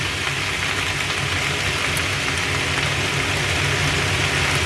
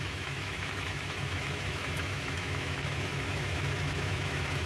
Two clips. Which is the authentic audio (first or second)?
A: first